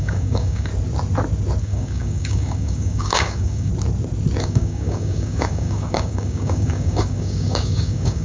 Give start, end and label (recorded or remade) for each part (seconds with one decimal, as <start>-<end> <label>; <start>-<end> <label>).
0.0-0.7 remade; 0.7-1.6 recorded; 1.6-3.7 remade; 3.7-4.4 recorded; 4.4-8.2 remade

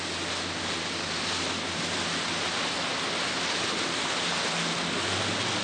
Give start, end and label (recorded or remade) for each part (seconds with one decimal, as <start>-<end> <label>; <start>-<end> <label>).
0.0-5.6 recorded